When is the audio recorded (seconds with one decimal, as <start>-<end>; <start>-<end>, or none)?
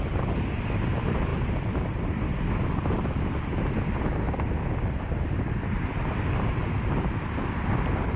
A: 0.0-8.2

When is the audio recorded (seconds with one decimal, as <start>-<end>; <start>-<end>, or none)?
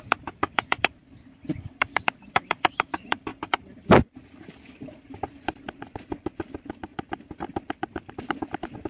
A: none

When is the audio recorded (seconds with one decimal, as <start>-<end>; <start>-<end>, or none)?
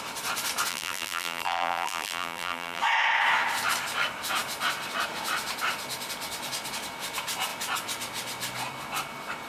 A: 0.0-0.7; 2.8-9.5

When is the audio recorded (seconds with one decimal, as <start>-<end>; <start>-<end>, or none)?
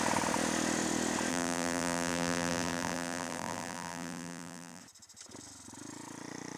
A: 0.0-1.3; 4.8-6.6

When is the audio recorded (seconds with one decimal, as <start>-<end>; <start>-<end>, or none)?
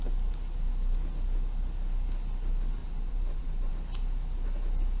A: 0.0-2.8; 3.7-5.0